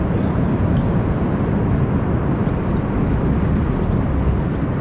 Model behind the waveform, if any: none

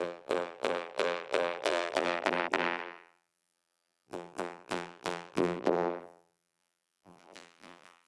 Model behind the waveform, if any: vocoder, BigVGAN v2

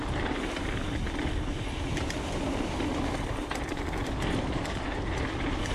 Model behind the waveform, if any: vocoder, BigVGAN v2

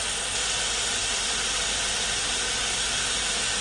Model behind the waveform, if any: none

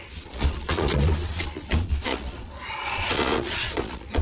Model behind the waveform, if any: vocoder, Vocos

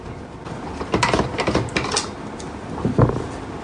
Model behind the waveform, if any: none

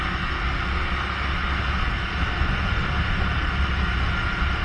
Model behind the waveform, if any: none